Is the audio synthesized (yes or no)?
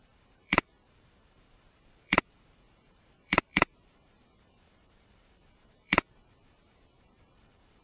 yes